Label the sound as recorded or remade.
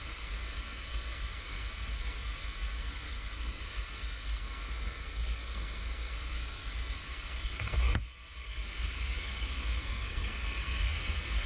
remade